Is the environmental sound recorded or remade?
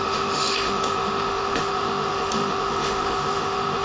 remade